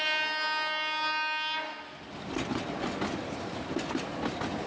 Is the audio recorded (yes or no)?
yes